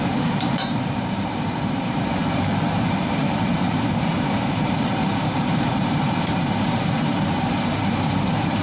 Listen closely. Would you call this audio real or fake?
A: fake